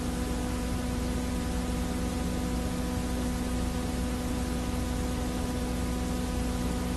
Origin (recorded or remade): recorded